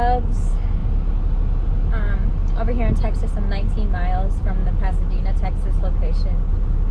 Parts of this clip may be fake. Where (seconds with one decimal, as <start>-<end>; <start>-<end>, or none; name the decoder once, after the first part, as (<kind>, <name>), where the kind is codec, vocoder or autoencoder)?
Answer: none